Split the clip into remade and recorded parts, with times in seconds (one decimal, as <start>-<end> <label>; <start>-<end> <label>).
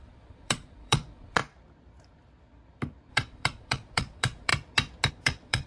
0.0-1.4 remade; 1.4-3.1 recorded; 3.1-4.5 remade; 4.5-5.1 recorded; 5.1-5.7 remade